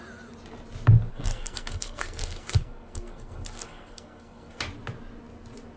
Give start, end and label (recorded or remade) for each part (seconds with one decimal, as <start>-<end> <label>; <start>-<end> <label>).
0.0-1.1 recorded; 1.1-4.6 remade; 4.6-5.8 recorded